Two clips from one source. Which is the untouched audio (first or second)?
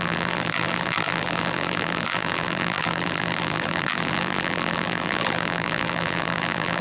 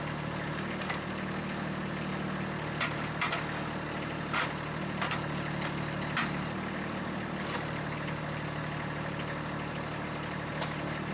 second